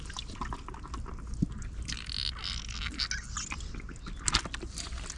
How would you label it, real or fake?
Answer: real